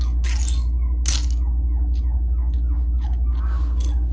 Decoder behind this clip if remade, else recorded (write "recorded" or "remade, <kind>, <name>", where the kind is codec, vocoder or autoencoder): recorded